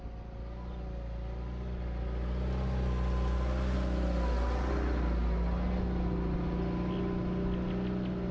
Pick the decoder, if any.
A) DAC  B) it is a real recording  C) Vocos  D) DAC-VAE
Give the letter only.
B